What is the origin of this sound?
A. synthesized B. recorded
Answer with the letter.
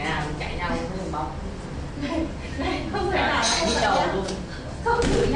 B